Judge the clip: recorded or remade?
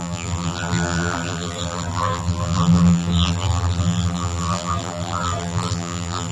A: remade